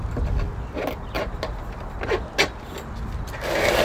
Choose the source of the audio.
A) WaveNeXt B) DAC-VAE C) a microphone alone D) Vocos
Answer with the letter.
C